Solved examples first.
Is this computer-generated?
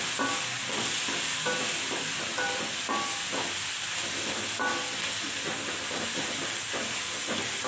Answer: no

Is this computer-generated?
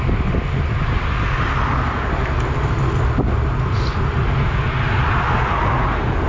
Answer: no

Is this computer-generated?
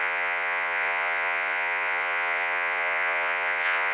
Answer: yes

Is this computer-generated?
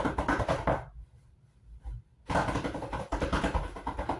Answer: no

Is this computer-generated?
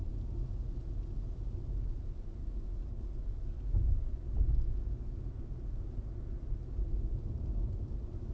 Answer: no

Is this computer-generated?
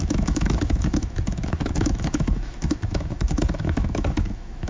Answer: yes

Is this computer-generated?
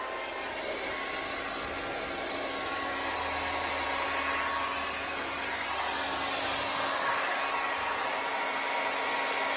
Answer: no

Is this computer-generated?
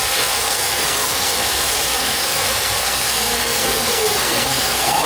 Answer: yes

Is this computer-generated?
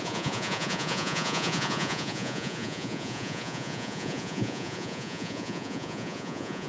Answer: yes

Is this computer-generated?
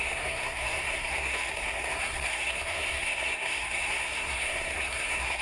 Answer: yes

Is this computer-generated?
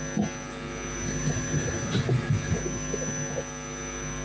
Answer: no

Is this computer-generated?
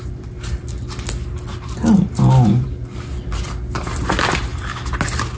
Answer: no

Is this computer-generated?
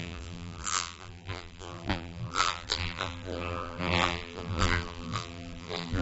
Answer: yes